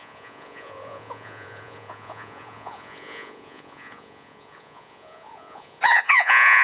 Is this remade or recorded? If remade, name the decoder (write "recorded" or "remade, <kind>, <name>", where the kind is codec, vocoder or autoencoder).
remade, vocoder, Vocos